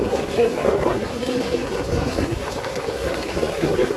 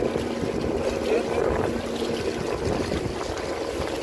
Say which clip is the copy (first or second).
first